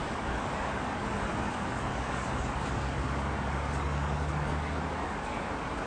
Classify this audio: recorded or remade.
remade